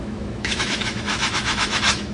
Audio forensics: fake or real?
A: fake